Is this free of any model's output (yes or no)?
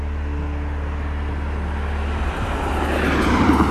yes